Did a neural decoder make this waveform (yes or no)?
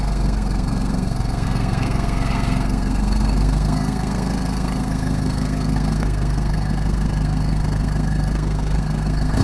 yes